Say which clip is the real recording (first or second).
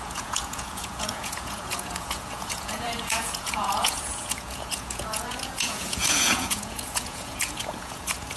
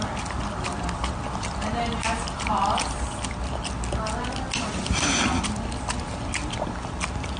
second